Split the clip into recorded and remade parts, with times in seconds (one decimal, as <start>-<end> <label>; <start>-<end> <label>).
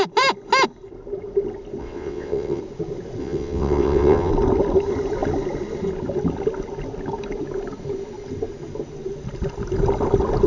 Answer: 0.0-1.8 recorded; 1.8-2.6 remade; 2.6-3.2 recorded; 3.2-4.3 remade; 4.3-10.5 recorded